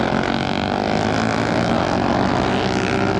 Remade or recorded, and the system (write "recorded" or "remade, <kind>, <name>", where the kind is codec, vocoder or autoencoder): recorded